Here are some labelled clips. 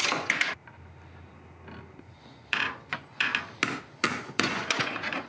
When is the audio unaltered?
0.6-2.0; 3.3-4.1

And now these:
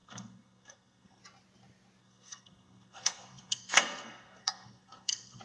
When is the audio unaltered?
1.2-2.0